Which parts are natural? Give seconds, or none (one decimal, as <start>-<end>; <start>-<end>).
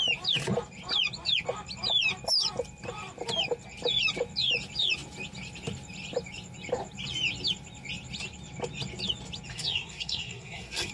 0.0-9.5